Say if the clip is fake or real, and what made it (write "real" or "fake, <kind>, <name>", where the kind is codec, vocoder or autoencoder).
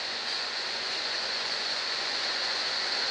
fake, vocoder, Vocos